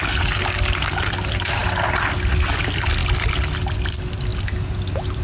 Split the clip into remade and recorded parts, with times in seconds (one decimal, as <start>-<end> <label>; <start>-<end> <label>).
0.0-5.2 recorded